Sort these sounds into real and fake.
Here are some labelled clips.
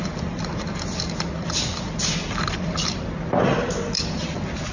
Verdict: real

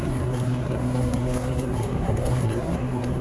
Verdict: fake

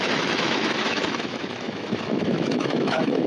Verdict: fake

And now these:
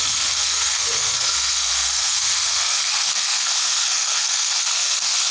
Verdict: fake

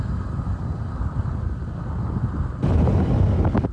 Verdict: real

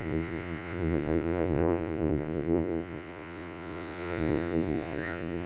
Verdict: fake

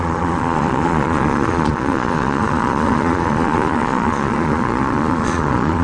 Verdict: fake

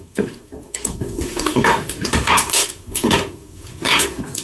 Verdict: fake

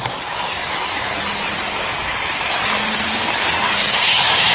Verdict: real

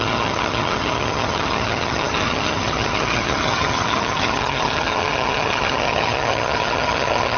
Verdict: fake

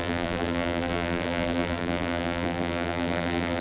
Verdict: fake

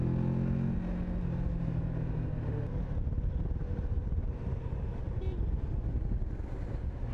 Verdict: real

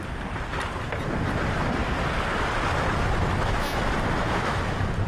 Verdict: real